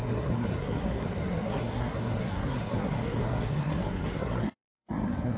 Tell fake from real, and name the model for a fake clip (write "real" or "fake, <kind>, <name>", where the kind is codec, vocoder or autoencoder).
fake, codec, SNAC